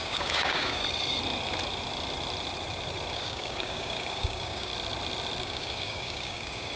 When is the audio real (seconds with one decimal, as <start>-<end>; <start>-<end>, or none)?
0.8-3.1; 4.7-5.4